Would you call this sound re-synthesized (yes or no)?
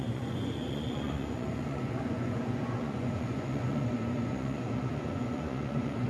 yes